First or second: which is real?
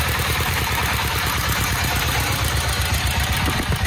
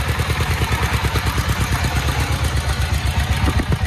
second